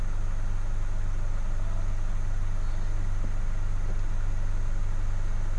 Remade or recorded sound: recorded